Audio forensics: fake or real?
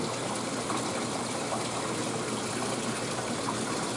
real